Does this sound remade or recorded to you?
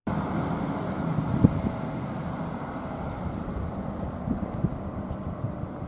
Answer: remade